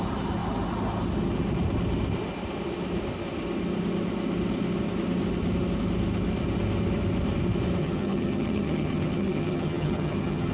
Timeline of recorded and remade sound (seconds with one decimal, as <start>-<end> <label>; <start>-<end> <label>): 0.0-7.8 recorded; 7.8-10.5 remade